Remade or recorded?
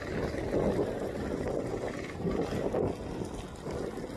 recorded